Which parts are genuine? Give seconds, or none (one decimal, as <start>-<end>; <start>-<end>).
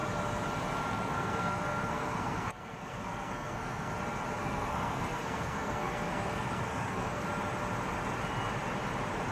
0.0-0.9; 3.9-4.4; 7.3-9.3